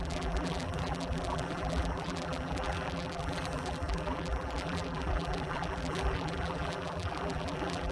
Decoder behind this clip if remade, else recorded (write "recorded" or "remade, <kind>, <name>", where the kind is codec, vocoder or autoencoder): remade, vocoder, BigVGAN v2